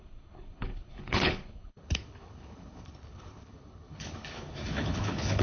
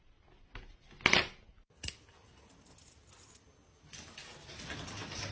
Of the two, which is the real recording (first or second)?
second